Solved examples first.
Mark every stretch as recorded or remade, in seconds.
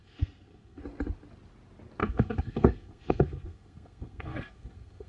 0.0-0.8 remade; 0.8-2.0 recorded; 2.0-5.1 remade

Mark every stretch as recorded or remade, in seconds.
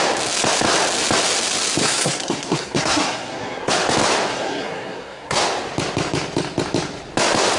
0.0-1.8 recorded; 1.8-3.7 remade; 3.7-4.3 recorded; 4.3-5.4 remade; 5.4-7.6 recorded